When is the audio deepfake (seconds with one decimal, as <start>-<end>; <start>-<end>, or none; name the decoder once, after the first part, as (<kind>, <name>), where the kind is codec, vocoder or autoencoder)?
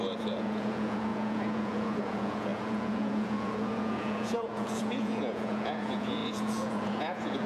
0.0-7.5 (vocoder, Vocos)